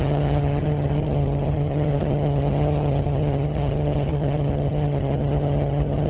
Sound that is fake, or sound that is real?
fake